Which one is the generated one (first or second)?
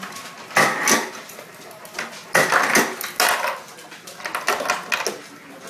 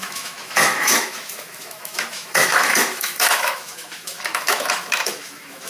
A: second